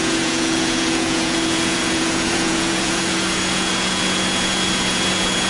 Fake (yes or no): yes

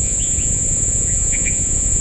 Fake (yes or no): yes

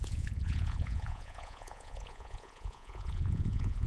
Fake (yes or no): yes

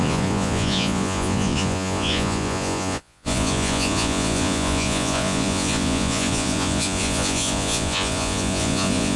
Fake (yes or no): yes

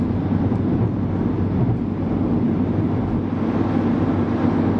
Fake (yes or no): no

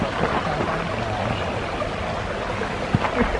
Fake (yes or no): no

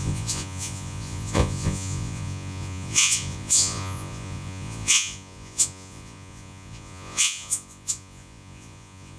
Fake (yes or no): yes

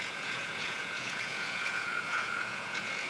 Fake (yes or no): yes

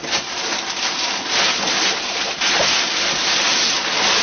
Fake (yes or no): no